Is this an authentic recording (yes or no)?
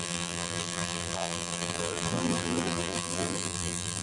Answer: no